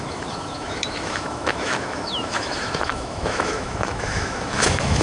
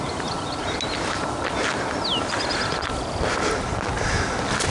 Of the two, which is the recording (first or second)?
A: second